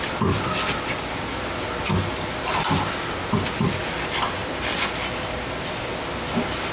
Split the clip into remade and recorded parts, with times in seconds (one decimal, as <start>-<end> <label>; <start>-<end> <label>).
0.0-6.7 recorded